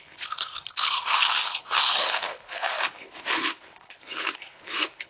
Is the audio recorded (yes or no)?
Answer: no